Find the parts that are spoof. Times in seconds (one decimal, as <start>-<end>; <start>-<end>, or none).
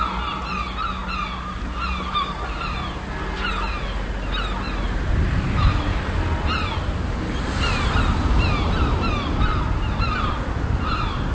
none